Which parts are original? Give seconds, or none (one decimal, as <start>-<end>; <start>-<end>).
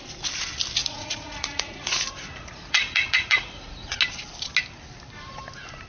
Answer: 0.0-0.8; 4.0-5.9